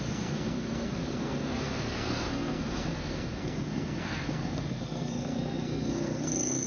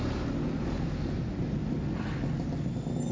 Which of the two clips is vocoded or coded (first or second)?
first